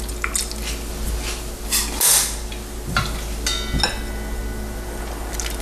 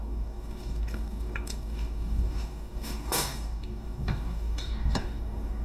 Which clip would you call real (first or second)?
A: first